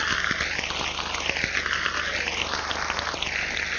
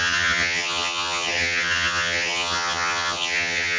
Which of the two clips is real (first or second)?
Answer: first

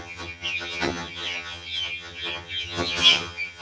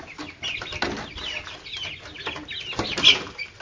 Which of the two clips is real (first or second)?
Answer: second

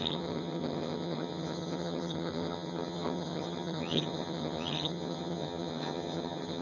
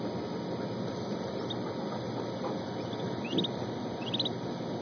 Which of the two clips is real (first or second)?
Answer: second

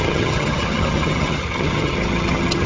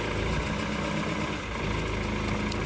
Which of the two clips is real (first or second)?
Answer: second